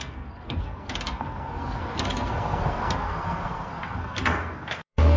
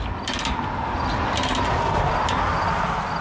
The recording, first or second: second